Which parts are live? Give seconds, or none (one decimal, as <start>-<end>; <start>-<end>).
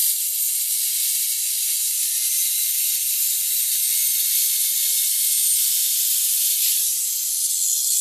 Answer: 0.0-6.7; 7.5-8.0